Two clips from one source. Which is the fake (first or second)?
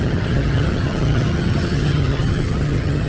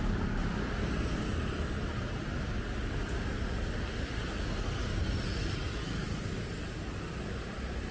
first